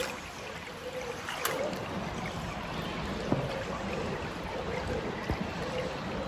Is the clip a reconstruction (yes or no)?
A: no